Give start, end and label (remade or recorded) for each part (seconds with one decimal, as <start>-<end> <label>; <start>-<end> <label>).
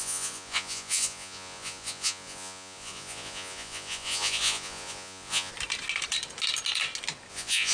0.0-5.5 remade; 5.5-7.3 recorded; 7.3-7.7 remade